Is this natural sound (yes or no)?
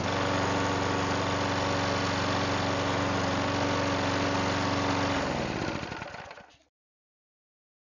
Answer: yes